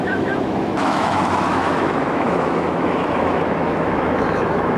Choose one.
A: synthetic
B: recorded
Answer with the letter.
A